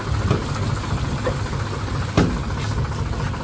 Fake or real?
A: real